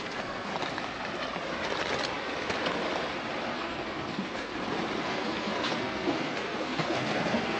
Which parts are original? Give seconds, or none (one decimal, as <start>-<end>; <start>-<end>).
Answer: 0.5-3.5; 4.5-5.0